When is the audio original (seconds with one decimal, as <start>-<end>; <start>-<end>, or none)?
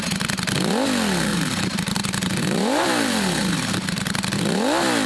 0.0-1.3; 4.4-5.1